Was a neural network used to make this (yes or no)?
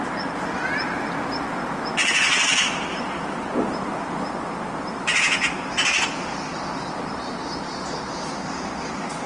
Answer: no